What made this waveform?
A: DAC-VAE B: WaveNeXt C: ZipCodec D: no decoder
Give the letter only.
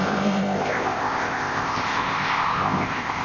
C